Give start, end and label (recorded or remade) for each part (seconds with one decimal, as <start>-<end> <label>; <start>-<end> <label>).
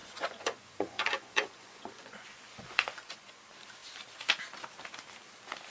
0.0-3.4 remade; 3.4-5.7 recorded